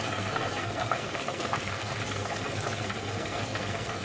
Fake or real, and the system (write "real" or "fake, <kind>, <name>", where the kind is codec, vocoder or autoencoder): fake, codec, SNAC